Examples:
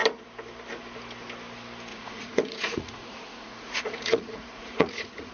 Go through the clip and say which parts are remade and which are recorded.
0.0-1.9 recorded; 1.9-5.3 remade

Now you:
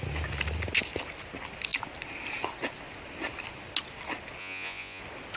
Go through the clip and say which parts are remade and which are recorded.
0.0-4.4 recorded; 4.4-5.0 remade; 5.0-5.4 recorded

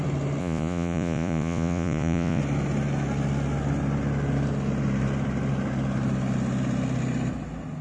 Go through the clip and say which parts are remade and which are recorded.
0.0-0.4 recorded; 0.4-2.4 remade; 2.4-7.8 recorded

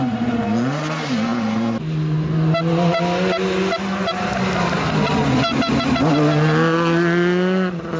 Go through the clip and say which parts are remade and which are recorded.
0.0-8.0 recorded

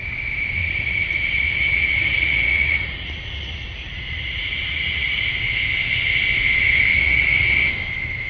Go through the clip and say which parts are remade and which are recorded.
0.0-0.6 recorded; 0.6-5.3 remade; 5.3-6.9 recorded; 6.9-7.7 remade; 7.7-8.3 recorded

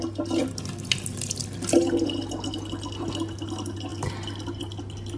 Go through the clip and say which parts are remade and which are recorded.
0.0-5.2 recorded